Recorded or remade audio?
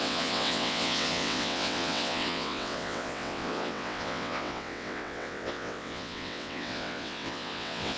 remade